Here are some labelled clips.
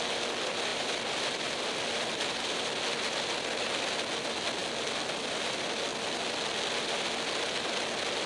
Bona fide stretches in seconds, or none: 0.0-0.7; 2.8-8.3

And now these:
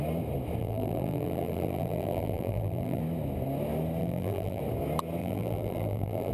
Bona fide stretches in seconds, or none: 0.0-0.6; 3.0-4.0; 4.6-5.2